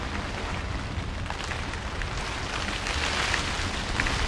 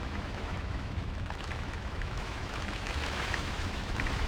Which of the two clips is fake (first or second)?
second